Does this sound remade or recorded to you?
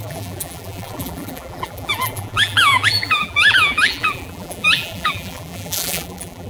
remade